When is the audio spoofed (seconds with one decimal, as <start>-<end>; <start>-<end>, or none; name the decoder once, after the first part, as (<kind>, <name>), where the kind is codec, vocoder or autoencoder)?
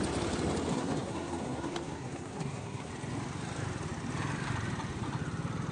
0.7-2.9 (codec, SNAC)